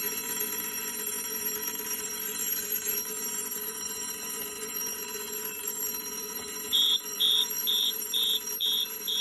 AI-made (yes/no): yes